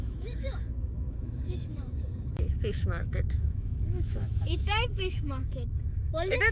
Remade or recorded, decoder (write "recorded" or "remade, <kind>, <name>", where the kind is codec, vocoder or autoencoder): remade, autoencoder, DAC-VAE